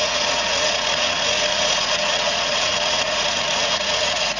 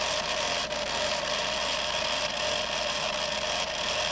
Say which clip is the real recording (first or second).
second